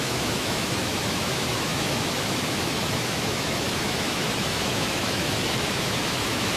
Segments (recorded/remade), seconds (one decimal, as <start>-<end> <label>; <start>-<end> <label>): 0.0-6.6 remade